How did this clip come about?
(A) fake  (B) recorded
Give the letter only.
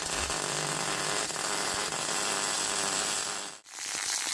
B